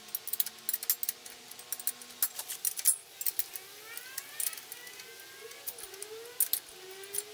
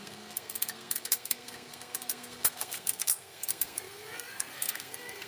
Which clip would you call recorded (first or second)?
first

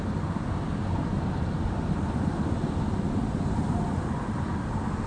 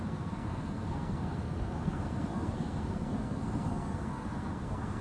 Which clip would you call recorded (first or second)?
first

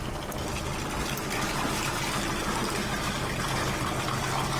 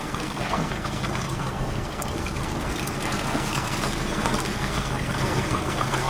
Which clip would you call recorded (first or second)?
first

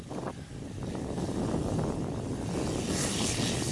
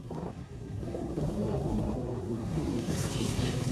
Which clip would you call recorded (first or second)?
first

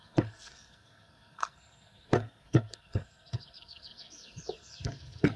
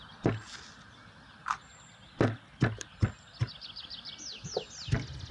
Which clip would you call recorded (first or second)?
second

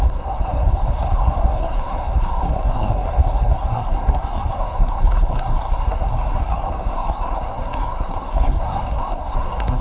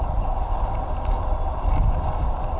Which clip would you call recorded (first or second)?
second